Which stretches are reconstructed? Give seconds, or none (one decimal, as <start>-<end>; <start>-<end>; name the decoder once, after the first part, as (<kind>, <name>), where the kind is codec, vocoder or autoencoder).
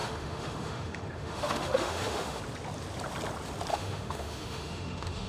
0.0-2.4 (autoencoder, DAC-VAE); 3.7-5.3